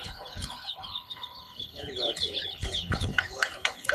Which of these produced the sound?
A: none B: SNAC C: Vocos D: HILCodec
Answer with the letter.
D